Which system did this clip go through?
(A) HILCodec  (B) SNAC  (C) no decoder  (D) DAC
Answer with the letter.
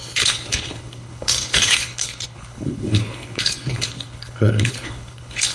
A